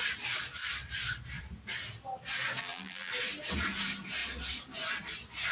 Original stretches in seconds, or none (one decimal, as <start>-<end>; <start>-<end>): 0.0-2.6; 3.1-5.5